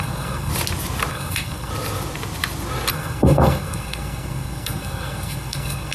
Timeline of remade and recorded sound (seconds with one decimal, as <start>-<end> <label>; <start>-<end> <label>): 0.0-0.5 remade; 0.5-1.1 recorded; 1.1-1.7 remade; 1.7-2.9 recorded; 2.9-5.9 remade